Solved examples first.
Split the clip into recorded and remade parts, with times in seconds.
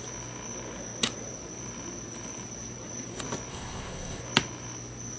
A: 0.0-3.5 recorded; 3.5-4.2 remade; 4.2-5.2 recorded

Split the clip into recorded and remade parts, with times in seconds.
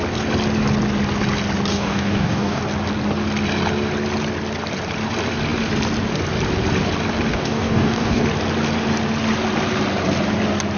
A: 0.0-1.7 recorded; 1.7-2.6 remade; 2.6-7.3 recorded; 7.3-8.2 remade; 8.2-10.8 recorded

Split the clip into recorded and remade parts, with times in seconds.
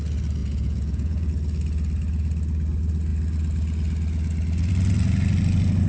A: 0.0-0.4 recorded; 0.4-1.3 remade; 1.3-5.9 recorded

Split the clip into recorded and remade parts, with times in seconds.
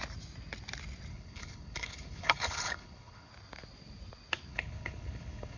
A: 0.0-1.1 recorded; 1.1-3.3 remade; 3.3-4.5 recorded; 4.5-5.6 remade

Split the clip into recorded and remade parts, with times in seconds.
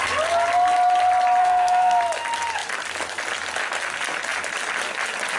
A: 0.0-1.4 recorded; 1.4-2.0 remade; 2.0-5.4 recorded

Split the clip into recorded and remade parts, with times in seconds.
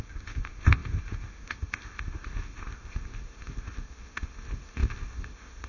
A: 0.0-5.7 remade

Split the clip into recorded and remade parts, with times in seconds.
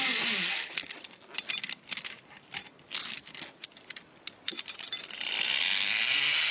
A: 0.0-6.5 recorded